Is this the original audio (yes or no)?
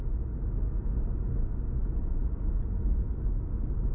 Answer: yes